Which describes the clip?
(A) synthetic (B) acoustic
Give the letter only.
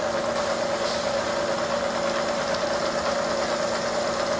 B